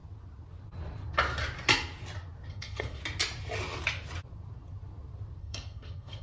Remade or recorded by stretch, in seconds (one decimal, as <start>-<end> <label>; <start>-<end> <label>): 0.0-2.5 recorded; 2.5-3.0 remade; 3.0-5.4 recorded; 5.4-6.2 remade